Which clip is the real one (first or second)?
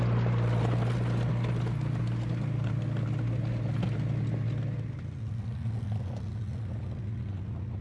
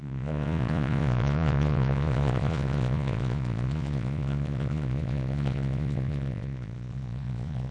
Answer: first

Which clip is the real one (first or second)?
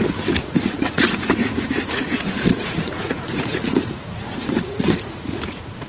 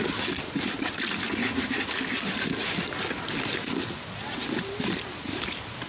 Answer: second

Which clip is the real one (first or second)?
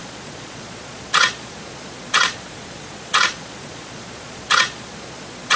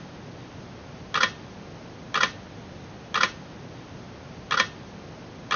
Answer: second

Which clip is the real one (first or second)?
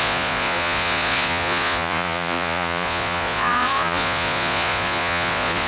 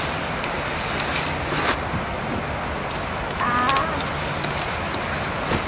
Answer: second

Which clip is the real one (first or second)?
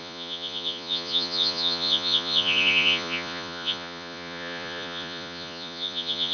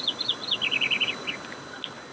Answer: second